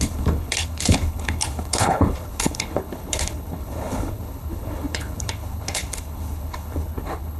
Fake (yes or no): yes